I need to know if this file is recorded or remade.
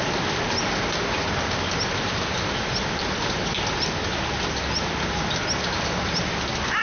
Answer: recorded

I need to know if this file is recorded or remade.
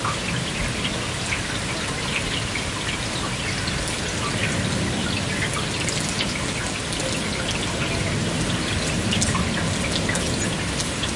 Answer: recorded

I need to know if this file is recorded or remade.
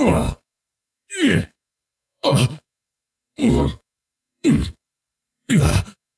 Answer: remade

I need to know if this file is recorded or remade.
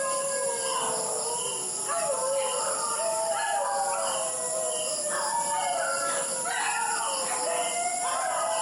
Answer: recorded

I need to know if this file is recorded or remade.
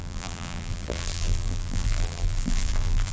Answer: remade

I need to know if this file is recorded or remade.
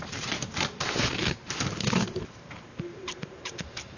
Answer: remade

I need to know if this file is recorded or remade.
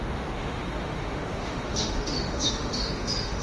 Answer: remade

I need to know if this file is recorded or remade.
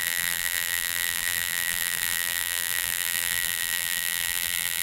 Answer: remade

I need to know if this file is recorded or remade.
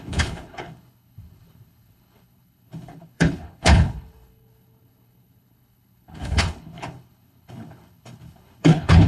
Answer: remade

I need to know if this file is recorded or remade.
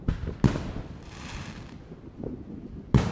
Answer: recorded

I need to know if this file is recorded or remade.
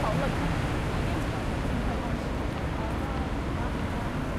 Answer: recorded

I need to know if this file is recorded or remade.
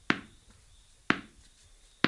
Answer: recorded